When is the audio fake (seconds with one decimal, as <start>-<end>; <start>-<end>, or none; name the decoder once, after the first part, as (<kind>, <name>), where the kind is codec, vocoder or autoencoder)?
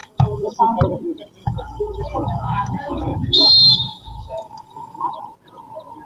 0.0-0.6 (codec, DAC); 1.4-5.1